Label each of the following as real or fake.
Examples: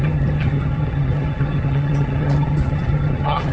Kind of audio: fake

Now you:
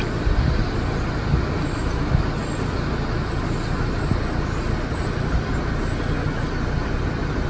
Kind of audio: real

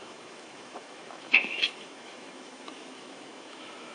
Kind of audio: fake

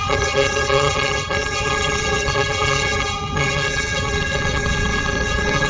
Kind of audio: fake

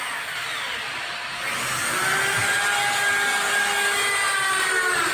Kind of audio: real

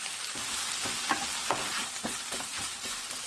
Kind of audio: real